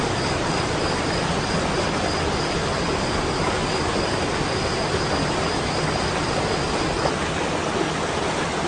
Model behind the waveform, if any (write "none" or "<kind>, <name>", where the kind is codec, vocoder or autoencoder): none